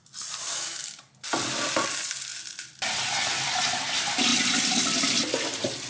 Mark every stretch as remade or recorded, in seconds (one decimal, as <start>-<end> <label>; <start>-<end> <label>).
0.0-2.3 remade; 2.3-3.3 recorded; 3.3-5.9 remade